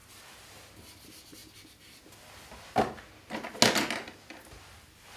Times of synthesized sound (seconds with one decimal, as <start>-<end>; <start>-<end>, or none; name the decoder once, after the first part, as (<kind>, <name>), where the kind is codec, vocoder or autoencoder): 0.0-0.9 (vocoder, BigVGAN v2)